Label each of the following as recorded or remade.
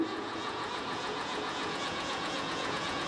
remade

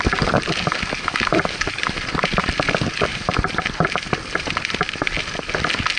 recorded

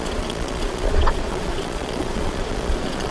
remade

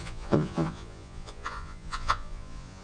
remade